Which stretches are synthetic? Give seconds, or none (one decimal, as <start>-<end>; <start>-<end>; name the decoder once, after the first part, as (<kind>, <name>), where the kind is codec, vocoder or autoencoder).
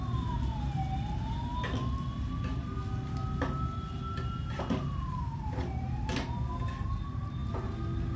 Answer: none